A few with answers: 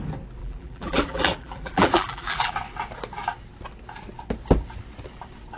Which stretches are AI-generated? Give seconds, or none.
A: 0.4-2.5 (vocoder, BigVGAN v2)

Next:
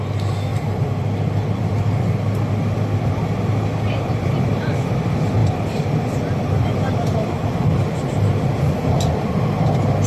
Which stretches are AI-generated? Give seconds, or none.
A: 0.5-2.1 (vocoder, BigVGAN v2); 5.4-7.5

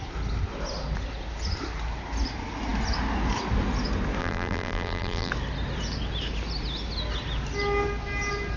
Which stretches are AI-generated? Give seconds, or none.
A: 4.2-5.3 (vocoder, BigVGAN v2)

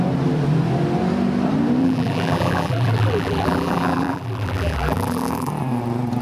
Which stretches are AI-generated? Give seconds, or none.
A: 1.8-5.5 (vocoder, BigVGAN v2)

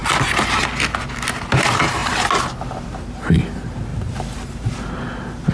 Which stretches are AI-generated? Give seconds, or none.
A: 3.9-4.7 (vocoder, BigVGAN v2)

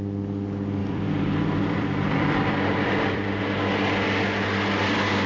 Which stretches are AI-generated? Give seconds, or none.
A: 0.8-3.4 (vocoder, BigVGAN v2)